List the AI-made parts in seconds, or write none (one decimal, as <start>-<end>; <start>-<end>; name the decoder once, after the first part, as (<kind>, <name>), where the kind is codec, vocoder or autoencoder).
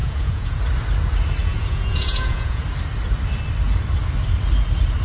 0.0-0.6 (vocoder, Vocos); 1.5-2.6